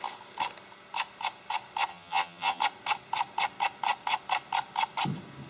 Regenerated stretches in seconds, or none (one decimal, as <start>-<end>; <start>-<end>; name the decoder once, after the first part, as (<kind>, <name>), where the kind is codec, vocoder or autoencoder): 1.9-2.6 (vocoder, HiFi-GAN)